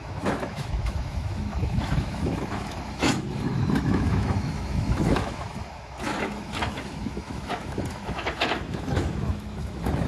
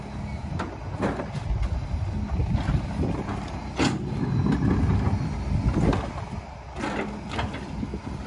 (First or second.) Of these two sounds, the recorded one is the second